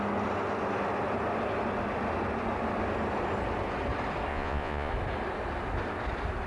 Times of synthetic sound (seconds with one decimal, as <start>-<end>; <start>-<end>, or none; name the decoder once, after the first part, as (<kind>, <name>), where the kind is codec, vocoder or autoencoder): 4.3-4.9 (vocoder, Vocos)